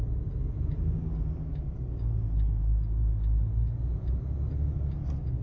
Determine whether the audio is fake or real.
real